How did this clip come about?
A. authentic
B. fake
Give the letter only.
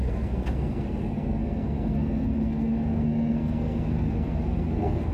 B